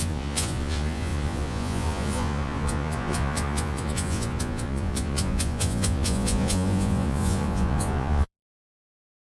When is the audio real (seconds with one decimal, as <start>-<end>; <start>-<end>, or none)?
none